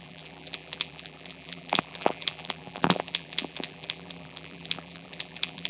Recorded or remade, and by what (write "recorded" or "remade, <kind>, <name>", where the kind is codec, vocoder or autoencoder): remade, vocoder, BigVGAN v2